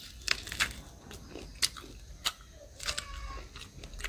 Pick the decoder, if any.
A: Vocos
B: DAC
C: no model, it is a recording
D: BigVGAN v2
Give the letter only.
C